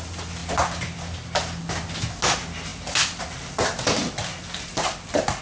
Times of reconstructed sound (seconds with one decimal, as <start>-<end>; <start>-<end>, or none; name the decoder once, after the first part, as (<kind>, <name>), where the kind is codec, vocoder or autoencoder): none